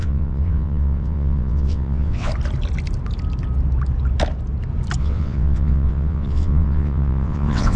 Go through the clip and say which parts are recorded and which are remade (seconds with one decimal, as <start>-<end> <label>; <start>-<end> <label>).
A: 0.0-2.3 remade; 2.3-5.0 recorded; 5.0-7.8 remade